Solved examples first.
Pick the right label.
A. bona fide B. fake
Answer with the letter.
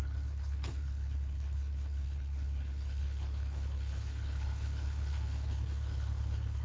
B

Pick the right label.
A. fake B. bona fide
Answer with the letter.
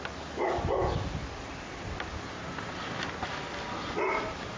B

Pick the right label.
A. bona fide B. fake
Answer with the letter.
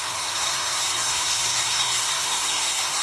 B